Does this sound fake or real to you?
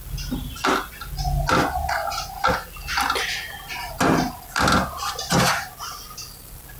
real